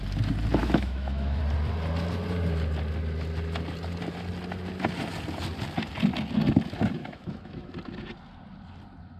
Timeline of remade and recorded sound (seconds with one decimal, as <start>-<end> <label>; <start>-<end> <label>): 0.0-0.6 recorded; 0.6-1.4 remade; 1.4-7.0 recorded; 7.0-7.7 remade; 7.7-9.2 recorded

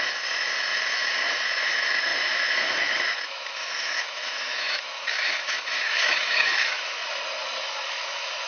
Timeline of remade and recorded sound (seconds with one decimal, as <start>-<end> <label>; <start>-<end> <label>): 0.0-7.0 remade; 7.0-7.6 recorded; 7.6-8.5 remade

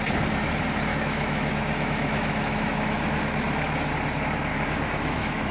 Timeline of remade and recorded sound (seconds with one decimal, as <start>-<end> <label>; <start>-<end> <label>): 0.0-0.9 recorded; 0.9-3.9 remade; 3.9-4.5 recorded; 4.5-5.5 remade